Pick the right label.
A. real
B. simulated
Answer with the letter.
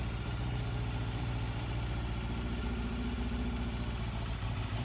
A